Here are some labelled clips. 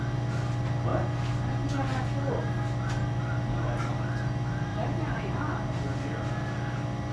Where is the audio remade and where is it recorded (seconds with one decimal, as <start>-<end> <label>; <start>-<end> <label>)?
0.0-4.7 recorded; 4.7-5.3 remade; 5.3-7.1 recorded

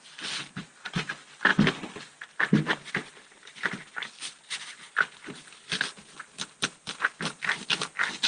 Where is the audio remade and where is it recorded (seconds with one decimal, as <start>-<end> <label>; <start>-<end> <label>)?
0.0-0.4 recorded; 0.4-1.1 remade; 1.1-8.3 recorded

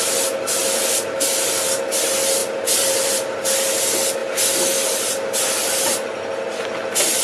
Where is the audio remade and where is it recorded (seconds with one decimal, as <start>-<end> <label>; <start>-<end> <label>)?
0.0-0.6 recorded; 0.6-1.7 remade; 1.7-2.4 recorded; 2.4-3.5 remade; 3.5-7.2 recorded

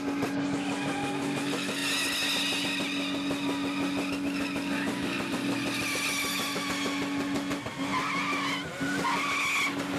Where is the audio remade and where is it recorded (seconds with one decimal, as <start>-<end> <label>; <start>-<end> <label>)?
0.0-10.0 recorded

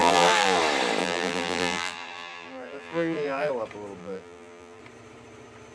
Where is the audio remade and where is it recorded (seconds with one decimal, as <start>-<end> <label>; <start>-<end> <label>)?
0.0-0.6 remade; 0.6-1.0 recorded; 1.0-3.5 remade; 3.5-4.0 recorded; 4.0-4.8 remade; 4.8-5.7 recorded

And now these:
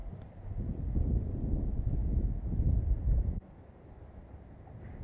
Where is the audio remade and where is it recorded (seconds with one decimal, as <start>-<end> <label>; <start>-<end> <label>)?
0.0-0.7 recorded; 0.7-2.0 remade; 2.0-5.0 recorded